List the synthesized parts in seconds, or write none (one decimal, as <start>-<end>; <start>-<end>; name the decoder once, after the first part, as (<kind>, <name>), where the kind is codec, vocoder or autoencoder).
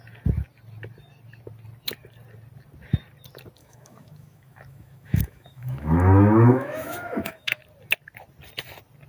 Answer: 3.6-7.6 (autoencoder, DAC-VAE)